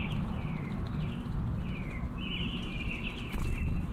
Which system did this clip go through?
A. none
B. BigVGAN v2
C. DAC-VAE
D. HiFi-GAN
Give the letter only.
A